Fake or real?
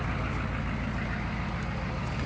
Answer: real